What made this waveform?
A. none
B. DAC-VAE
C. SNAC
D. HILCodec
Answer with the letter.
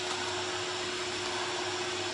A